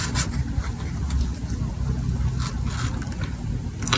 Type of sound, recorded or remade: recorded